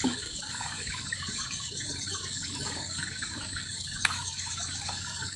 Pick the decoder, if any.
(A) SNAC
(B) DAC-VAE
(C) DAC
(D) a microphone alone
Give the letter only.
C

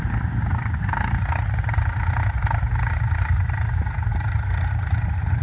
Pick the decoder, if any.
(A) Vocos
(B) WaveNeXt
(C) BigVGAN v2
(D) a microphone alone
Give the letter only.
D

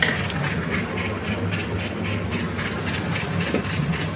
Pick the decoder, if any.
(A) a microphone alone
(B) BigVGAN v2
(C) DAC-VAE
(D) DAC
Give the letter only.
A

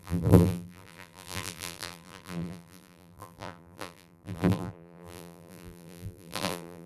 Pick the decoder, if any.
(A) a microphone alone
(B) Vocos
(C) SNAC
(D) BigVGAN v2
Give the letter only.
D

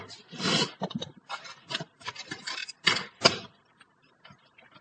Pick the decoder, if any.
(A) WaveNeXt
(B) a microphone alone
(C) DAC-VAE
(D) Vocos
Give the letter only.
B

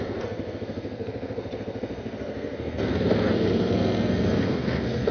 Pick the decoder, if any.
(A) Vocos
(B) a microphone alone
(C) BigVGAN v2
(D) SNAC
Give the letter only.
D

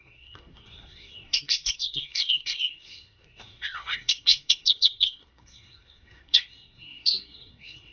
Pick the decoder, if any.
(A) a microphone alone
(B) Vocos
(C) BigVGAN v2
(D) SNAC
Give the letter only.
D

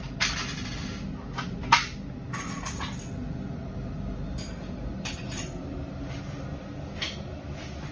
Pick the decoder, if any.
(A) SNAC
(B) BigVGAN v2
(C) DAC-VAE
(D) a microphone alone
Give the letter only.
D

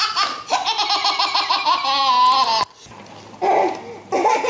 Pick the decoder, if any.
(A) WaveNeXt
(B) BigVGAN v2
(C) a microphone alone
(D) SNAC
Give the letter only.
C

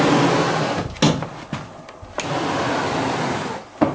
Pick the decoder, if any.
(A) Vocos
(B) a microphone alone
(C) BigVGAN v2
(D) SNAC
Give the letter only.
B